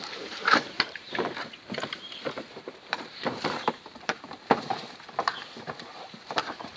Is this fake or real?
fake